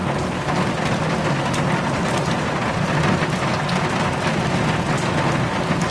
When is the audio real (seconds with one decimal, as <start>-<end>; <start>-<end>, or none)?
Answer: 0.0-5.9